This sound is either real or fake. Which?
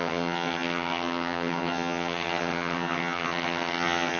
fake